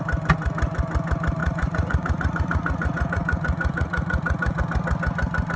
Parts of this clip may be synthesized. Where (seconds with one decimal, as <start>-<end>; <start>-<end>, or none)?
1.4-4.6